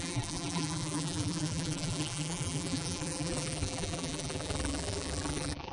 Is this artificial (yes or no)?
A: yes